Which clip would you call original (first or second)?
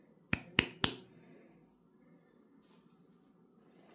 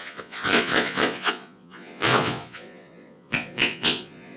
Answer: first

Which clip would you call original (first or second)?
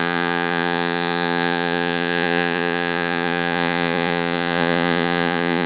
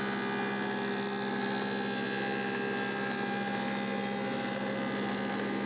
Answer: second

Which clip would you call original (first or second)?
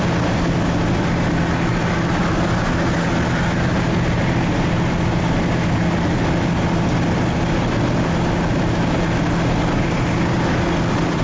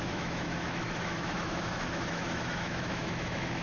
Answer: first